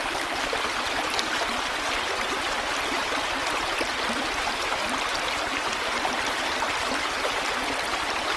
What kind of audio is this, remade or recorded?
recorded